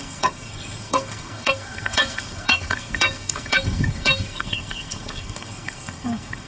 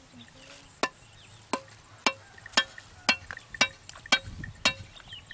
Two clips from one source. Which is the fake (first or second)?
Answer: first